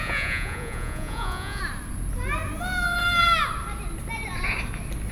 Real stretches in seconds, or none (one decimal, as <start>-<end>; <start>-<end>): 1.6-5.1